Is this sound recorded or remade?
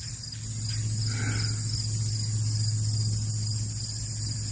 recorded